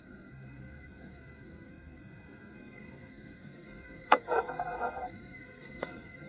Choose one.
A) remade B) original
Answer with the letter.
A